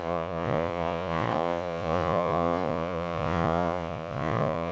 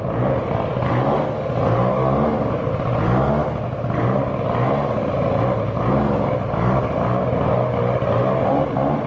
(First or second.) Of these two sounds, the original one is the second